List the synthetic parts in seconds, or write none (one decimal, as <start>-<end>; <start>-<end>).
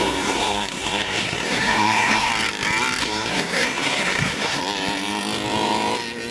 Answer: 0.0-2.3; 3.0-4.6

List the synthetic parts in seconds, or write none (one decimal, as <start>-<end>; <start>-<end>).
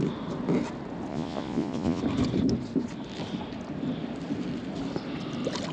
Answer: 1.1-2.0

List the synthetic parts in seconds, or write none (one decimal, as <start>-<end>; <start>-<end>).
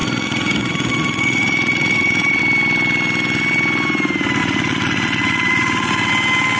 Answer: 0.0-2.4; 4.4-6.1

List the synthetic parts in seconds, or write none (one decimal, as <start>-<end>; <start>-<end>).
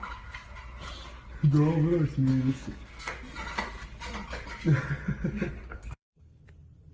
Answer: 2.3-3.1; 5.7-6.4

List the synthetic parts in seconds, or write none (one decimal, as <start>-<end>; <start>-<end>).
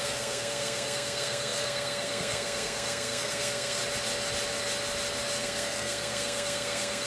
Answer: 0.0-3.8; 5.4-7.1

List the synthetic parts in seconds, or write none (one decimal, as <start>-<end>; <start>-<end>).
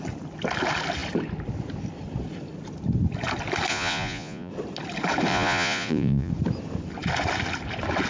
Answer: 3.7-4.5; 5.3-6.3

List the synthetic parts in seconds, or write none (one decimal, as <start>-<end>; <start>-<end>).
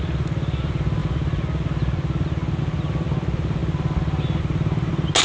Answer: none